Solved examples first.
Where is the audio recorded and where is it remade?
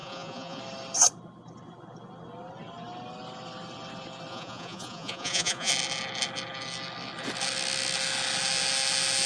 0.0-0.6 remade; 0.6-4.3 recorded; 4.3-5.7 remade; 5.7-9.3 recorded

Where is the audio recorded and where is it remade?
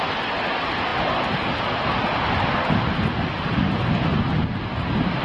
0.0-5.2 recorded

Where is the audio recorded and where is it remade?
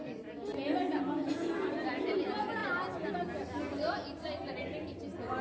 0.0-5.4 recorded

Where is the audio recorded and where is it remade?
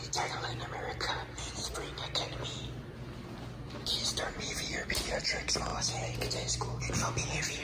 0.0-7.6 recorded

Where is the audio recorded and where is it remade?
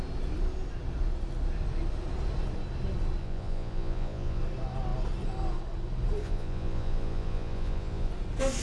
0.0-3.2 recorded; 3.2-4.4 remade; 4.4-6.2 recorded; 6.2-8.1 remade; 8.1-8.6 recorded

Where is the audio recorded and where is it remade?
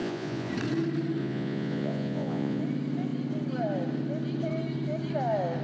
0.0-0.5 remade; 0.5-1.2 recorded; 1.2-2.6 remade; 2.6-5.6 recorded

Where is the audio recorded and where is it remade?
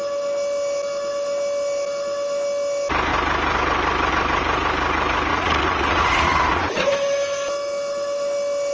0.0-5.3 recorded; 5.3-6.9 remade; 6.9-8.7 recorded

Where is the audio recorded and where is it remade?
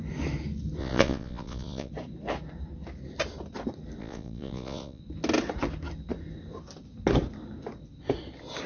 0.0-0.8 recorded; 0.8-1.9 remade; 1.9-4.0 recorded; 4.0-5.0 remade; 5.0-8.7 recorded